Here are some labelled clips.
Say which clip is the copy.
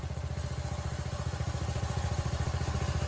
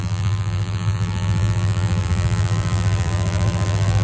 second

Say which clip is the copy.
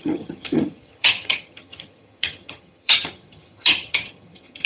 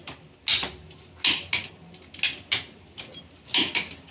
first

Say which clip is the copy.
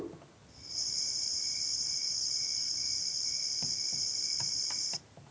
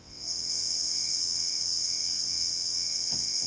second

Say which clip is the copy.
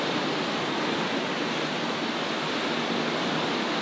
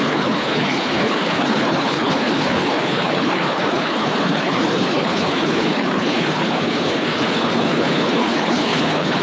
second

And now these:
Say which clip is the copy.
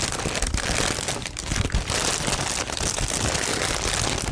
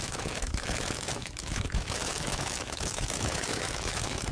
second